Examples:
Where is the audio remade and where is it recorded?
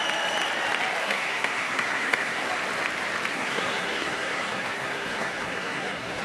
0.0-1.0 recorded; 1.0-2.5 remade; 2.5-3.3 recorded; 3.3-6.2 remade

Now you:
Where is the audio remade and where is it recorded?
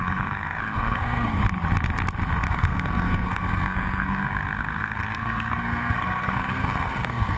0.0-1.4 remade; 1.4-2.5 recorded; 2.5-7.4 remade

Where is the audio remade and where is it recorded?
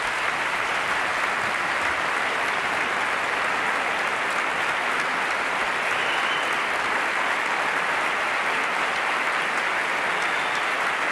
0.0-11.1 recorded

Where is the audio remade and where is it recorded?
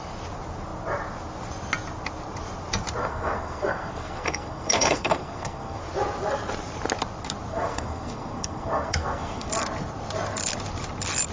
0.0-3.0 recorded; 3.0-5.8 remade; 5.8-7.5 recorded; 7.5-9.5 remade; 9.5-11.3 recorded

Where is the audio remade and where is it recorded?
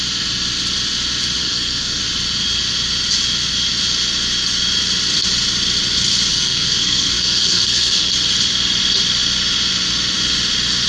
0.0-1.4 recorded; 1.4-2.0 remade; 2.0-6.3 recorded; 6.3-8.1 remade; 8.1-10.9 recorded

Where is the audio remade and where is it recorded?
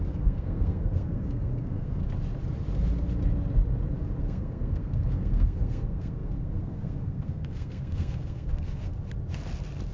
0.0-2.0 remade; 2.0-4.2 recorded; 4.2-8.9 remade; 8.9-9.9 recorded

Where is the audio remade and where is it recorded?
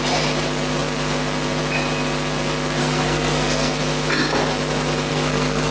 0.0-2.8 recorded; 2.8-3.7 remade; 3.7-5.1 recorded; 5.1-5.7 remade